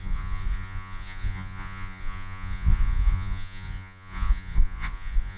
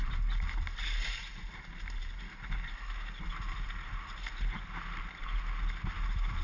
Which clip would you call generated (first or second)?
first